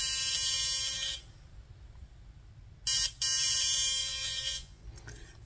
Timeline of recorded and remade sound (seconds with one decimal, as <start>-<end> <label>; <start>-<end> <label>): 0.0-4.0 recorded; 4.0-4.8 remade; 4.8-5.5 recorded